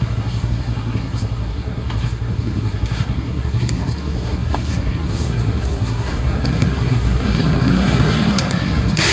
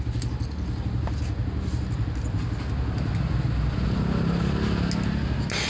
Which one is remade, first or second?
first